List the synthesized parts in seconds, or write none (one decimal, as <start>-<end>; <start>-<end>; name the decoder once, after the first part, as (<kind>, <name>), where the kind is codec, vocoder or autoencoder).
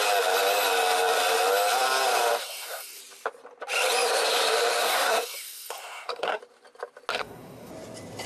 2.4-3.0 (codec, SNAC); 4.8-6.4; 7.1-7.7